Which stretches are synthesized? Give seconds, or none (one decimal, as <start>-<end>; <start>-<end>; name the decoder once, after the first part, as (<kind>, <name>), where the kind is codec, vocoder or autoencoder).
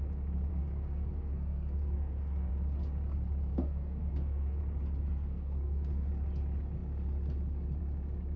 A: 0.5-2.5 (codec, SNAC); 3.5-4.6; 5.0-6.1